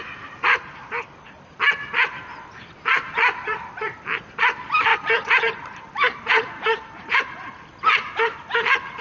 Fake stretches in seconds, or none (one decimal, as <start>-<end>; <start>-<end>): 0.5-1.6; 4.9-7.5